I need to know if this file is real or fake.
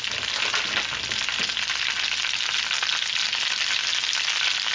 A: real